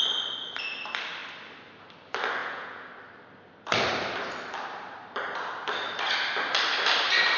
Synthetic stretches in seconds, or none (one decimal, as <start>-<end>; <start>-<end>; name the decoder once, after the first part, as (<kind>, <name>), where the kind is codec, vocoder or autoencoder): 2.4-2.9 (vocoder, Vocos)